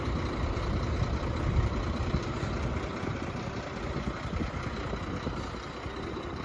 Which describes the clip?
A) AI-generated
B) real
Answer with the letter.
B